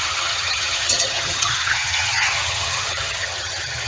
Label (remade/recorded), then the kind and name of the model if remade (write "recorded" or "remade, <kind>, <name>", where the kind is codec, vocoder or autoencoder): remade, vocoder, HiFi-GAN